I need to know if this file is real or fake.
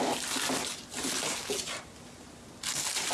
real